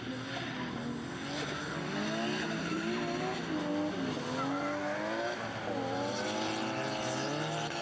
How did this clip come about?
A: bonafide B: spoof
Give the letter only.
A